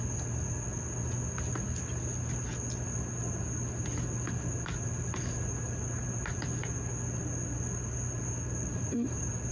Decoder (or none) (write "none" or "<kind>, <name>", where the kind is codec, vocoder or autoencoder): none